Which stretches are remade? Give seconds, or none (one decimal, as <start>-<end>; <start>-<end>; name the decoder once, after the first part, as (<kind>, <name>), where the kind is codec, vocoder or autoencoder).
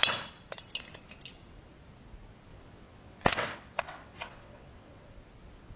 2.5-5.0 (vocoder, WaveNeXt)